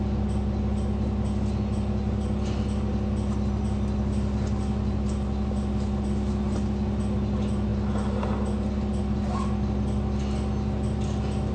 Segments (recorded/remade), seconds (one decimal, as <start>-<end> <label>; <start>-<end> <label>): 0.0-11.5 recorded